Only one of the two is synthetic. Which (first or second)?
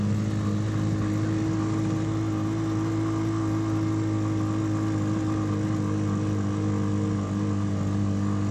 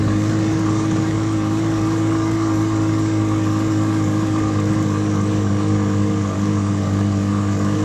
second